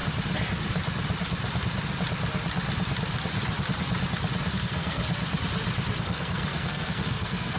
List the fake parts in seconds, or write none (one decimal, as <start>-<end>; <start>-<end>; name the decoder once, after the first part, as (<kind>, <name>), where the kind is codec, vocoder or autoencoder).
4.5-5.0 (codec, SNAC); 6.0-7.6